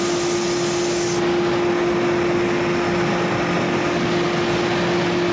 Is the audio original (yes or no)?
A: yes